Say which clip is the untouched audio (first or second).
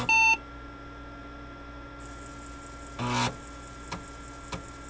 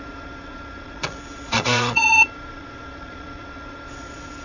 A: first